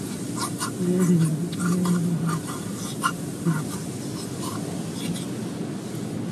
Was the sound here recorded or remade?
recorded